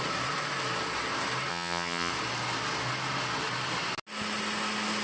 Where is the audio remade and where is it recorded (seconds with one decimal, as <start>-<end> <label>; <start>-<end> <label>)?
0.0-1.5 recorded; 1.5-2.1 remade; 2.1-5.0 recorded